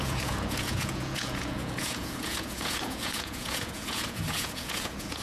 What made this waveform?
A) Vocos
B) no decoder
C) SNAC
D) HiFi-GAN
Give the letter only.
A